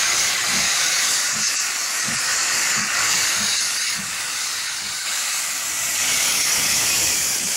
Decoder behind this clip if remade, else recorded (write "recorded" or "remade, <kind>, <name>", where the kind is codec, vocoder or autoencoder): remade, codec, DAC